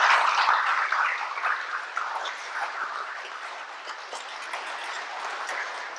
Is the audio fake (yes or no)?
no